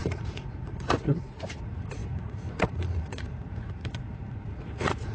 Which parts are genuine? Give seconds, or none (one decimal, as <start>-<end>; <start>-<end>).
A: none